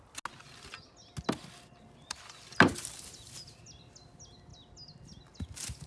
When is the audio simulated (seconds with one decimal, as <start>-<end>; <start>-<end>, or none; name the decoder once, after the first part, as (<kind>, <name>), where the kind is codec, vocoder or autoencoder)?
none